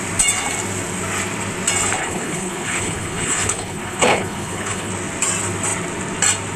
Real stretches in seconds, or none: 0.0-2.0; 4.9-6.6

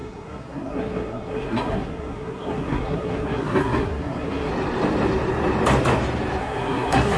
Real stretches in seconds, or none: 4.5-6.4

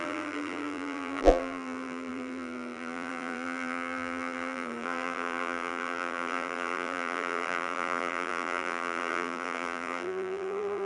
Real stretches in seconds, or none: none

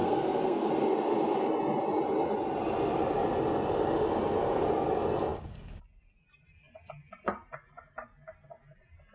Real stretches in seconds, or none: 0.7-9.1

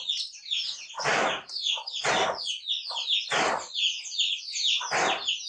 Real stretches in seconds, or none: 0.0-5.5

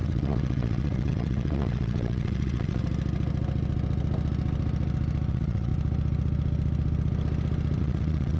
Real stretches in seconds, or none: 2.8-5.3; 5.7-7.8

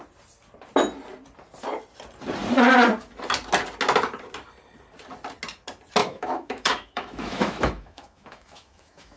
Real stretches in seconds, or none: 0.0-6.0